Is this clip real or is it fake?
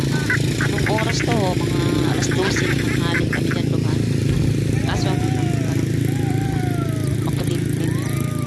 real